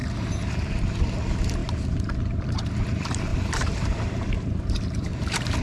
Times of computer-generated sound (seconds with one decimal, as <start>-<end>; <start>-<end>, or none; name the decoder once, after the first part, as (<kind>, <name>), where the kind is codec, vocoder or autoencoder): 0.0-1.0 (vocoder, BigVGAN v2); 3.3-5.6

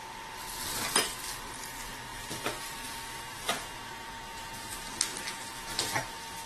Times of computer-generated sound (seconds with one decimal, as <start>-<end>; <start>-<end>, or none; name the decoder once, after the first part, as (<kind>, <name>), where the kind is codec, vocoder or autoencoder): none

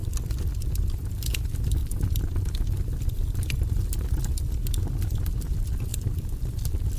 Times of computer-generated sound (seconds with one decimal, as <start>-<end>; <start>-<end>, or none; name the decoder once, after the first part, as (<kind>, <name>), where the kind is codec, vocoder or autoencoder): none

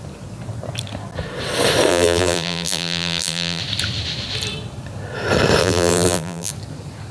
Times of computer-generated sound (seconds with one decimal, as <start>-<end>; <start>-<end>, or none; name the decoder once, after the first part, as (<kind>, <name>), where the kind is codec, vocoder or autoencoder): 1.9-3.6 (vocoder, BigVGAN v2); 5.6-6.5

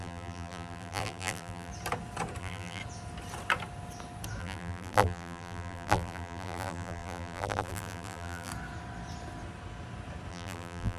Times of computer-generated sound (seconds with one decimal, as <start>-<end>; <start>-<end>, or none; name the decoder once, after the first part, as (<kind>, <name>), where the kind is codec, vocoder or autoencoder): 0.0-1.7 (vocoder, BigVGAN v2); 2.4-2.8; 4.4-8.5; 10.3-11.0